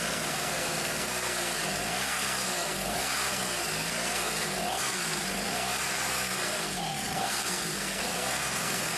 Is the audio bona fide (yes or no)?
no